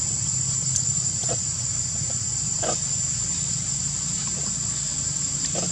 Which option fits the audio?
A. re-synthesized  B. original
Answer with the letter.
B